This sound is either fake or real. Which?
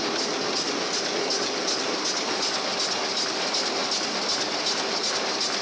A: real